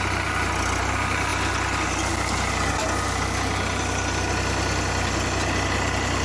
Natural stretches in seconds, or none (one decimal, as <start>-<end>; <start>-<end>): 0.0-6.2